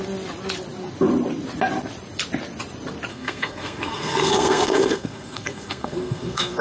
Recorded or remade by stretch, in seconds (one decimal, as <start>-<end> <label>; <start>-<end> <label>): 0.0-3.1 recorded; 3.1-6.6 remade